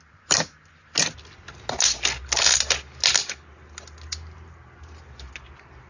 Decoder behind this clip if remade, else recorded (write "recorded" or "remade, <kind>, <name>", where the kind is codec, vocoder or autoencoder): recorded